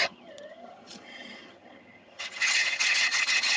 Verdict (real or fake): fake